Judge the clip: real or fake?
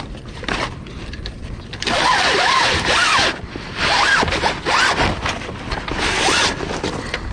real